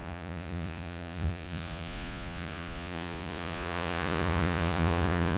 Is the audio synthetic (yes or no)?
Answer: yes